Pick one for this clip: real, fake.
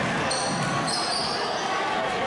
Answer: real